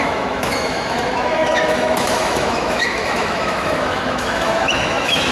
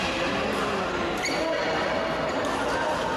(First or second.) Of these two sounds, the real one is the second